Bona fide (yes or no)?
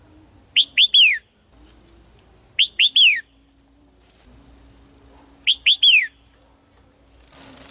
yes